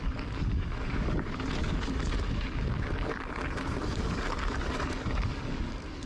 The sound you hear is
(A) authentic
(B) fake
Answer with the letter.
B